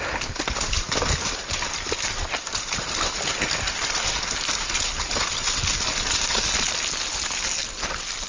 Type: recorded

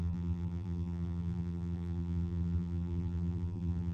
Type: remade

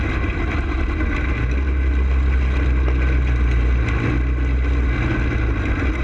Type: recorded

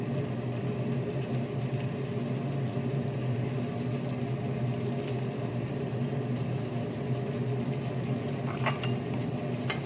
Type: recorded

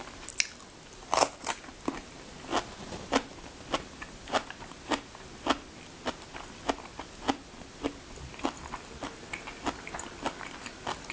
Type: recorded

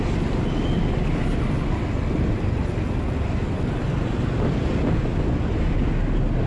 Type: recorded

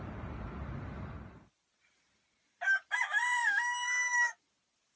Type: recorded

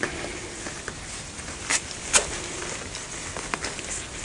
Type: recorded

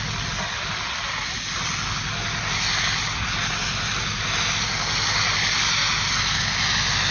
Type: recorded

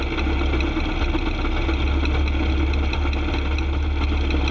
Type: recorded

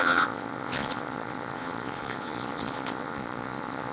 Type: remade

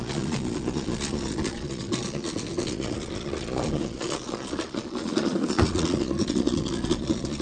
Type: remade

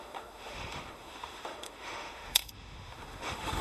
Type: remade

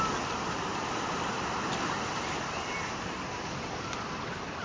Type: recorded